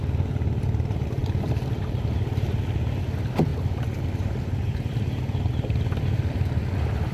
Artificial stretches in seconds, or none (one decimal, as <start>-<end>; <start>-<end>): none